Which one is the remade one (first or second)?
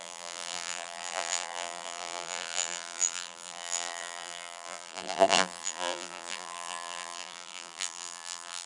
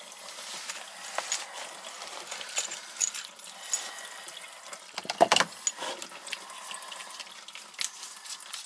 first